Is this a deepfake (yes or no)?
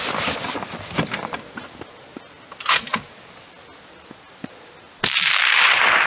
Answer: no